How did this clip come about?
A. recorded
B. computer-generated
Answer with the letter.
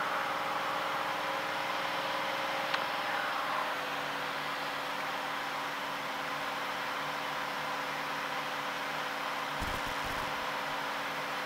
A